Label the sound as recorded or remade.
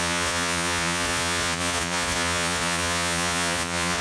remade